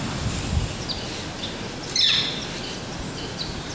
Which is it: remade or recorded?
remade